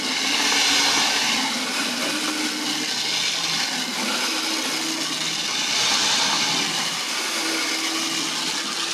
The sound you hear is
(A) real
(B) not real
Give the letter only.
A